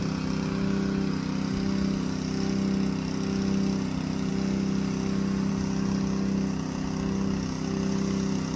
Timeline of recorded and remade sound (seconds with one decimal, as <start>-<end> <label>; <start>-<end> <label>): 0.0-8.6 recorded